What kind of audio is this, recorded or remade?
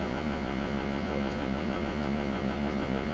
remade